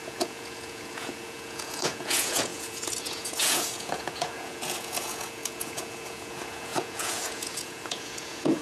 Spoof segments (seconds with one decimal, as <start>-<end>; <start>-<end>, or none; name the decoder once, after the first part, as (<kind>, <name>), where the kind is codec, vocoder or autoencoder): 0.0-8.6 (vocoder, Vocos)